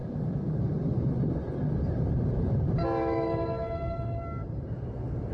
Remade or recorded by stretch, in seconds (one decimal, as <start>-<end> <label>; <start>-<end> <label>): 0.0-3.0 recorded; 3.0-4.4 remade; 4.4-5.3 recorded